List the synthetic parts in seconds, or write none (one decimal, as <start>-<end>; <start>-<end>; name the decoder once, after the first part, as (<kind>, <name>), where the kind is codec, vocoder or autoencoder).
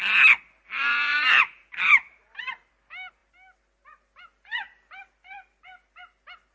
1.1-2.7 (vocoder, BigVGAN v2)